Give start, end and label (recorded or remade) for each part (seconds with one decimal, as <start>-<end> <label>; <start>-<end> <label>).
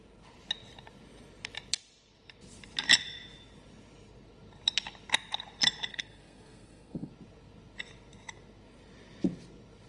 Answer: 0.0-5.9 recorded; 5.9-7.1 remade; 7.1-9.9 recorded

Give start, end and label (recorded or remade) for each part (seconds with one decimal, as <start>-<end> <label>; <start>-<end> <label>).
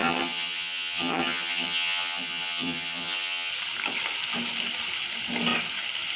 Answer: 0.0-3.5 remade; 3.5-6.2 recorded